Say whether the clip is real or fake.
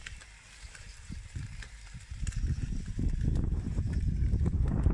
fake